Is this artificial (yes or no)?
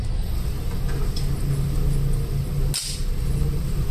no